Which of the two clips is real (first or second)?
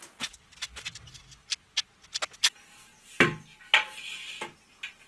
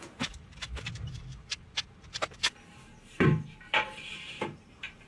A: first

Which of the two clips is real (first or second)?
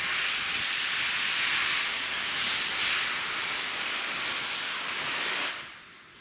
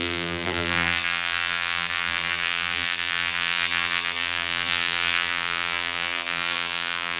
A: first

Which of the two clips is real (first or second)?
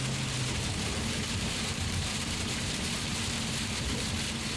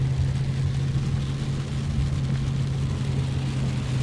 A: second